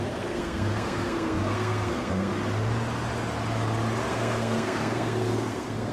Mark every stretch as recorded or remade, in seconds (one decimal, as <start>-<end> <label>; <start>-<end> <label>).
0.0-2.3 remade; 2.3-4.1 recorded; 4.1-5.9 remade